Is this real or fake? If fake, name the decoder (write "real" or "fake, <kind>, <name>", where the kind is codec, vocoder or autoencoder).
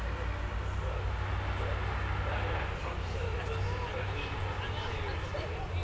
real